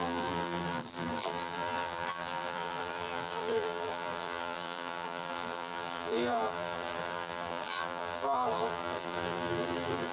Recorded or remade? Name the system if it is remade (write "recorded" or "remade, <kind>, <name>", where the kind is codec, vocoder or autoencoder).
remade, vocoder, BigVGAN v2